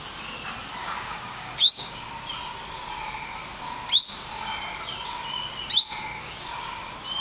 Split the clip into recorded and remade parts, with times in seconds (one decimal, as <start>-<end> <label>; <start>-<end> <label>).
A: 0.0-0.8 recorded; 0.8-2.1 remade; 2.1-6.2 recorded; 6.2-6.7 remade; 6.7-7.2 recorded

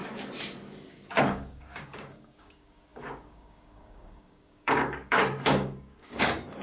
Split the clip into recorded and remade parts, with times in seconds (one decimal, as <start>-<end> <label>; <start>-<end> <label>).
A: 0.0-1.2 recorded; 1.2-6.6 remade

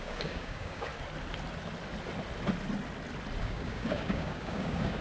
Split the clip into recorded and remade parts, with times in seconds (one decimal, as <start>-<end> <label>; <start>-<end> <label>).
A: 0.0-0.9 remade; 0.9-3.4 recorded; 3.4-5.0 remade

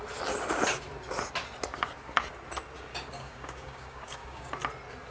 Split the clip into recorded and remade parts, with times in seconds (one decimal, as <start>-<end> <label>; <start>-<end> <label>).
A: 0.0-2.9 recorded; 2.9-4.5 remade; 4.5-5.1 recorded

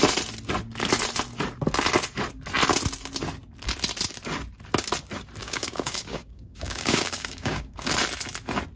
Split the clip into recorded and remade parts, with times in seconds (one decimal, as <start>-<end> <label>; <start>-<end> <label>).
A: 0.0-5.4 recorded; 5.4-7.9 remade; 7.9-8.8 recorded

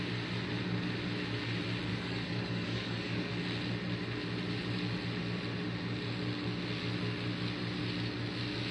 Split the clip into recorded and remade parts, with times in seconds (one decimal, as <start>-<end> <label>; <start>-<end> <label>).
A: 0.0-1.9 recorded; 1.9-3.3 remade; 3.3-8.7 recorded

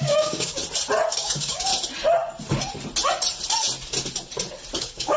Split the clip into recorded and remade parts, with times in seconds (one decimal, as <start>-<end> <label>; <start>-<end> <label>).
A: 0.0-0.6 remade; 0.6-1.1 recorded; 1.1-1.7 remade; 1.7-4.8 recorded; 4.8-5.2 remade